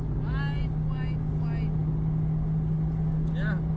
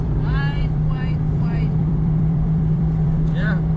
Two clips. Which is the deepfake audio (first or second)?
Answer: second